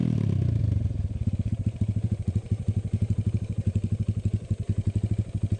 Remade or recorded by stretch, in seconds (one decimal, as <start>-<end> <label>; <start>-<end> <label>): 0.0-0.6 recorded; 0.6-4.0 remade; 4.0-5.6 recorded